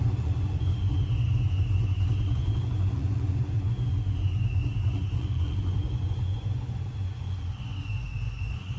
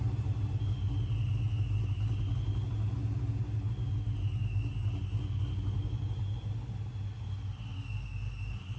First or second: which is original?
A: second